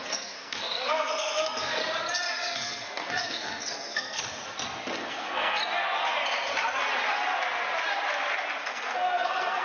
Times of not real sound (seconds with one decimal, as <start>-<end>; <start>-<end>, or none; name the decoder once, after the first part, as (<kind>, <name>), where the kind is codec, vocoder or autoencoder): 0.0-1.8 (codec, SNAC); 2.3-4.2; 5.0-5.6; 8.6-9.6